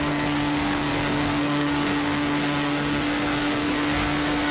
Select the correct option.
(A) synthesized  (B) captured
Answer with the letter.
A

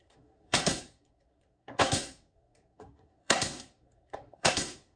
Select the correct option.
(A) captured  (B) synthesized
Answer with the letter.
B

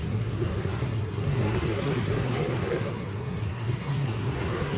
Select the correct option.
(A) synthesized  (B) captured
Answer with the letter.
A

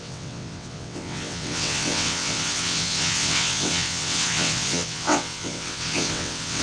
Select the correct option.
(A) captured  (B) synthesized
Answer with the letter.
B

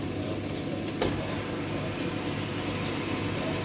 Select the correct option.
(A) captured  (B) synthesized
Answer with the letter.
A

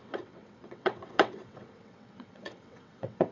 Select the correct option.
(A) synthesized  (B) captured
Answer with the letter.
A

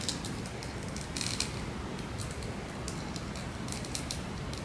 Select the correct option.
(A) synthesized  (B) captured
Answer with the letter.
B